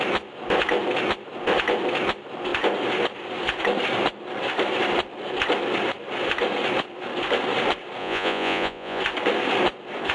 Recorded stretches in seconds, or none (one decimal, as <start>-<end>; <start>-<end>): 0.0-8.0; 9.0-10.1